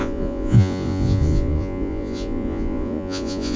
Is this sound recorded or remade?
remade